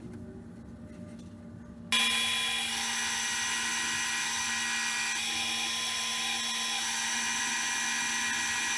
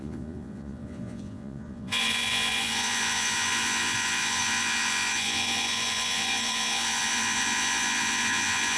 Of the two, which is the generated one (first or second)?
second